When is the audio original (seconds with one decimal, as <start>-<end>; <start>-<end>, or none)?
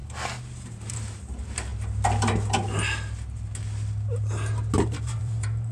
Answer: 0.0-0.9; 1.7-4.8